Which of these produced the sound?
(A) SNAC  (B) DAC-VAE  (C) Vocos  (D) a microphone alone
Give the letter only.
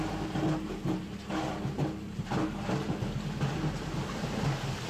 D